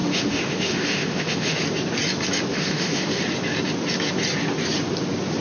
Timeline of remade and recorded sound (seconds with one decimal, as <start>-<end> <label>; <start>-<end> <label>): 0.0-1.6 remade; 1.6-2.5 recorded; 2.5-3.2 remade; 3.2-5.4 recorded